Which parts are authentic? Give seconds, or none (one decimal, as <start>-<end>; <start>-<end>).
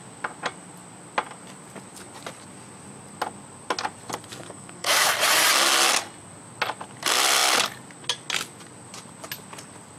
0.0-4.3; 4.9-10.0